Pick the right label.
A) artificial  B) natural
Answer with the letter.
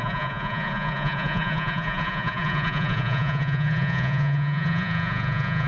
A